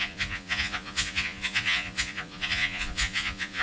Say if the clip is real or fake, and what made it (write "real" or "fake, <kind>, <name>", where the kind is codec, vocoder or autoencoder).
fake, vocoder, Vocos